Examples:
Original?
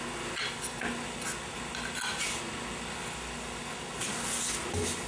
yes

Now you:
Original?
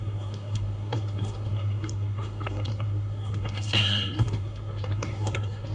no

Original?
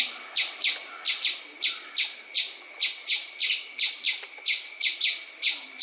yes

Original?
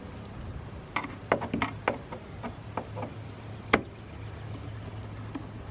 yes